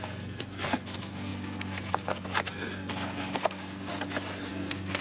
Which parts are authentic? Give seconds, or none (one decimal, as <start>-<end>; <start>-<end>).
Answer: 3.9-4.5